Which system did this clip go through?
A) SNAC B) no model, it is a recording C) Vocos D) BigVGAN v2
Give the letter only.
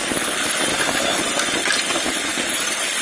B